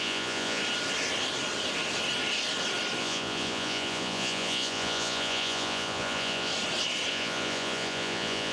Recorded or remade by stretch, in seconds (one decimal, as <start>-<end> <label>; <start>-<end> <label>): 0.0-0.6 remade; 0.6-3.0 recorded; 3.0-6.5 remade; 6.5-7.1 recorded; 7.1-8.5 remade